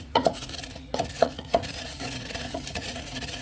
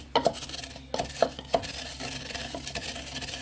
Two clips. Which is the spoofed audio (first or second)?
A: first